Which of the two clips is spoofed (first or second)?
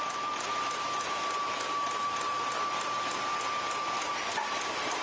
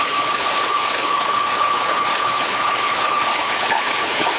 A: second